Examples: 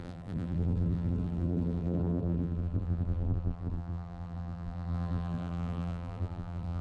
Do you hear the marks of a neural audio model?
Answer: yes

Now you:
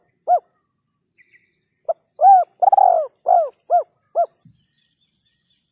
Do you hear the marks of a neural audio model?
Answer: no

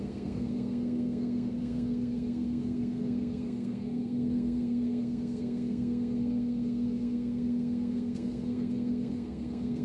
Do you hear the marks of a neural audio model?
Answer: yes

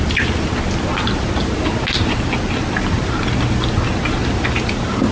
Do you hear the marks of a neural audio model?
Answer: no